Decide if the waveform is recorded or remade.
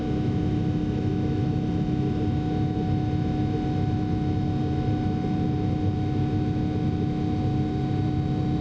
recorded